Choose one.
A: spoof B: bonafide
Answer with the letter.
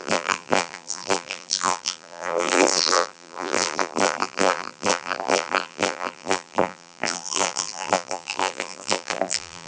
A